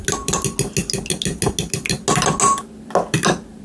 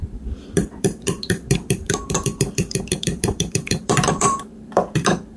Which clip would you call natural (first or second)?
first